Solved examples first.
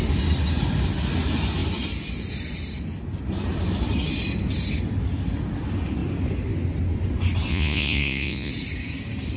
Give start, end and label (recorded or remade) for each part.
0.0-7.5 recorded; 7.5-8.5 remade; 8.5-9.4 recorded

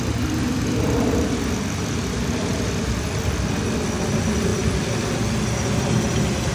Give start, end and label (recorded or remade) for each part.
0.0-6.5 recorded

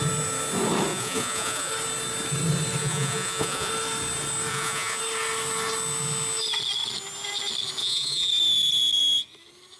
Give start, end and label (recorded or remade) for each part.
0.0-0.9 recorded; 0.9-1.7 remade; 1.7-2.8 recorded; 2.8-3.7 remade; 3.7-4.5 recorded; 4.5-5.0 remade; 5.0-7.8 recorded; 7.8-8.3 remade; 8.3-9.8 recorded

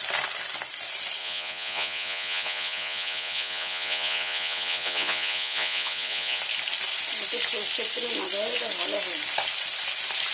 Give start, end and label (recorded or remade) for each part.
0.0-1.2 recorded; 1.2-6.4 remade; 6.4-10.3 recorded

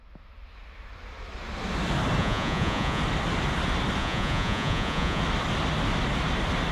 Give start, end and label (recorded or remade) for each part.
0.0-2.2 recorded; 2.2-3.0 remade; 3.0-4.0 recorded; 4.0-5.2 remade; 5.2-6.7 recorded

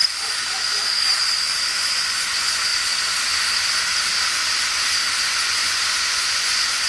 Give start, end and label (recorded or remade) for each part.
0.0-1.8 recorded; 1.8-2.7 remade; 2.7-5.2 recorded; 5.2-6.9 remade

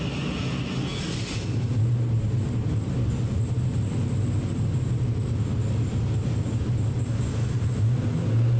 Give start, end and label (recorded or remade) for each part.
0.0-8.6 recorded

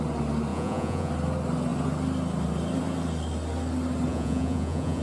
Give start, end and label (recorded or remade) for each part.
0.0-0.5 recorded; 0.5-1.1 remade; 1.1-4.1 recorded; 4.1-5.0 remade